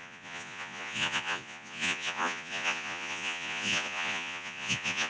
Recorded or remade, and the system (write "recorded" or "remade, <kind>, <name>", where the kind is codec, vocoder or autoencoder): remade, vocoder, Vocos